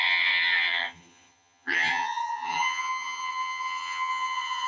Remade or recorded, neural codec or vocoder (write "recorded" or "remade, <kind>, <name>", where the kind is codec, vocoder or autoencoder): remade, vocoder, HiFi-GAN